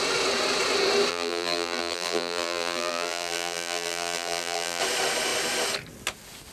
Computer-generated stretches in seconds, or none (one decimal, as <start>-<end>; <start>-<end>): 1.1-4.8